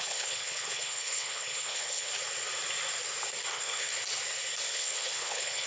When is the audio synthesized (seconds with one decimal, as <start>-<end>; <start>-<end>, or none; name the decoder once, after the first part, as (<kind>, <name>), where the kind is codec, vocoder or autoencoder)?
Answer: 0.0-2.1 (codec, HILCodec); 3.5-3.9; 4.7-5.7